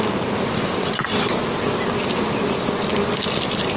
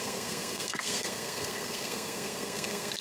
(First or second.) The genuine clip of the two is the first